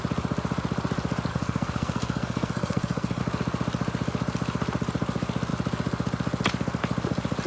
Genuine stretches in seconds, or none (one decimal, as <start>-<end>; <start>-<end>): 0.0-1.3; 3.2-7.5